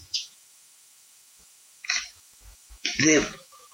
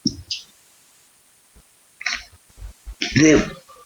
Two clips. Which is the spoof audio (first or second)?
first